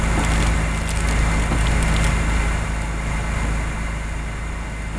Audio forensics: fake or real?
real